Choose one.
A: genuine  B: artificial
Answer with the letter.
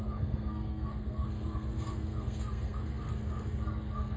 B